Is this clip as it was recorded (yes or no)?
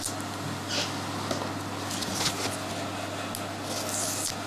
yes